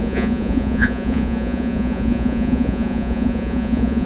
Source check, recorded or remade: remade